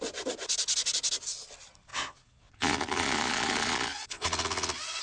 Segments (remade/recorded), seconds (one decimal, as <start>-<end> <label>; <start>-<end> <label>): 0.0-1.9 recorded; 1.9-5.0 remade